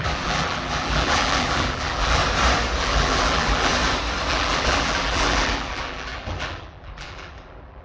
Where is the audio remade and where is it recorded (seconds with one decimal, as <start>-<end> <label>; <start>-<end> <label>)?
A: 0.0-2.2 remade; 2.2-2.8 recorded; 2.8-3.7 remade; 3.7-4.3 recorded; 4.3-7.8 remade